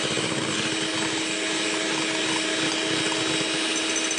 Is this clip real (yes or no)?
yes